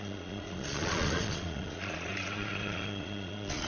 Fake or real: fake